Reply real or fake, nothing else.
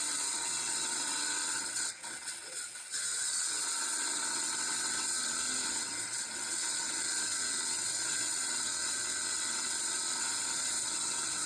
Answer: fake